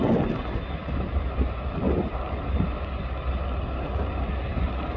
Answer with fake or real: real